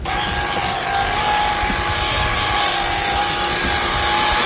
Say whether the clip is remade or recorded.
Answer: recorded